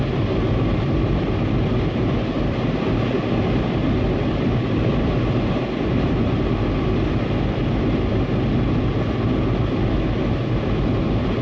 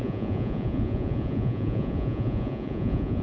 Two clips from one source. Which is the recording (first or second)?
first